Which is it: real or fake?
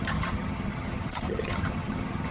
fake